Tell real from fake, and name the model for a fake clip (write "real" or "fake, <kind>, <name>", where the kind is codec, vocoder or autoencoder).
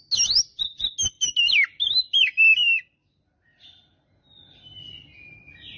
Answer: real